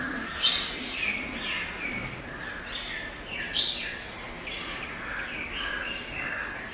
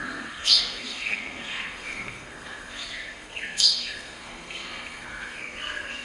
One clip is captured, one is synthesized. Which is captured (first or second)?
first